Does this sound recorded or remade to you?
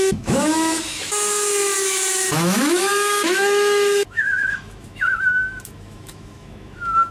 remade